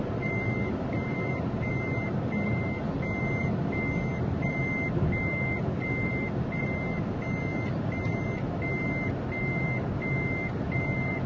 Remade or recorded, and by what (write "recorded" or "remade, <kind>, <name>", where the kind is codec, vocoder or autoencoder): recorded